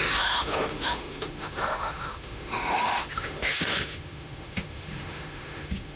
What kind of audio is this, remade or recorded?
remade